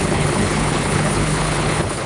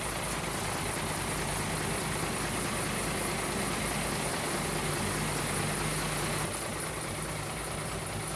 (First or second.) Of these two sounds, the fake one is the first